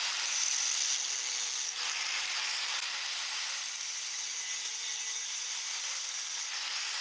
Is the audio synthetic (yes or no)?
no